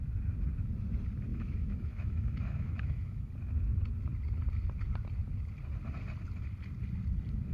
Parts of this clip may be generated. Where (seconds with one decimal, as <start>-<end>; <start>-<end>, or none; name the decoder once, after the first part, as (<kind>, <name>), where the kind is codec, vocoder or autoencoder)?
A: 1.3-3.3 (autoencoder, DAC-VAE)